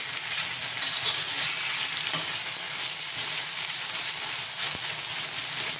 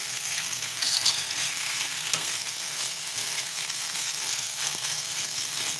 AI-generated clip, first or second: second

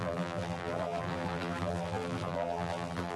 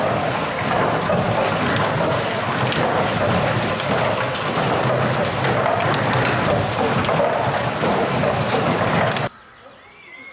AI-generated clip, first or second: first